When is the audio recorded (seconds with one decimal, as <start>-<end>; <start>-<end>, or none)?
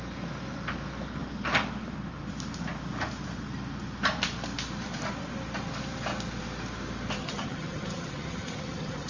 0.0-7.2